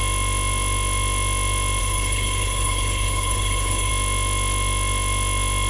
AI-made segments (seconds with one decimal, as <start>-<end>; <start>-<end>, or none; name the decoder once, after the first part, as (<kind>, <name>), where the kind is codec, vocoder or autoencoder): 1.8-3.9 (codec, HILCodec)